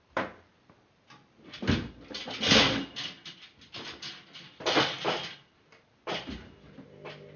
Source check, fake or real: real